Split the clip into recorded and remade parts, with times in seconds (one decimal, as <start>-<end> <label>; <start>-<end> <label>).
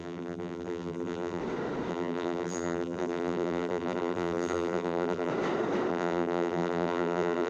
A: 0.0-1.4 remade; 1.4-1.9 recorded; 1.9-5.3 remade; 5.3-5.9 recorded; 5.9-7.5 remade